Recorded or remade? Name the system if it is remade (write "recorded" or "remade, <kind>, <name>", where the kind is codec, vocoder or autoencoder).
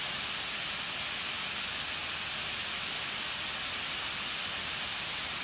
recorded